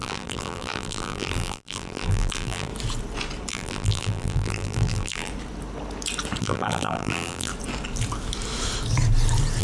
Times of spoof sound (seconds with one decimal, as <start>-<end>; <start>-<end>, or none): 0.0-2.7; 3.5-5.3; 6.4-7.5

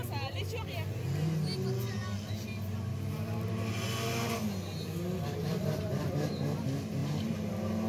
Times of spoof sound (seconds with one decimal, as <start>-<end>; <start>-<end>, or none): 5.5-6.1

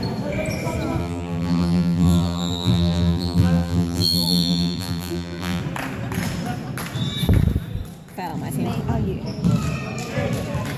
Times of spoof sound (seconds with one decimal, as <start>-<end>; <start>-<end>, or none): 1.0-5.6

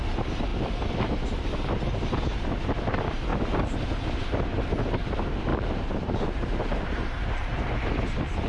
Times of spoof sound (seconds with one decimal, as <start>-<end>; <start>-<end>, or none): 5.5-7.9